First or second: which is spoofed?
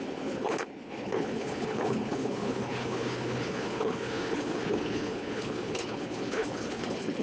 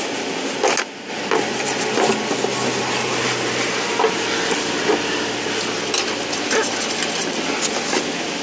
first